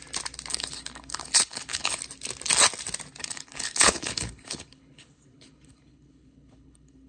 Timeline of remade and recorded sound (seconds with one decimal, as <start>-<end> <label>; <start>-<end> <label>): 0.0-0.5 recorded; 0.5-2.0 remade; 2.0-3.2 recorded; 3.2-7.1 remade